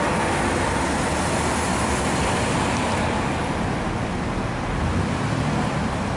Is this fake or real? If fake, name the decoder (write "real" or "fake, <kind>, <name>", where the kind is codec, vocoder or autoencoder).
real